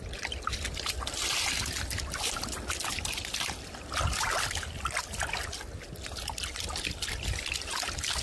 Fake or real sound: real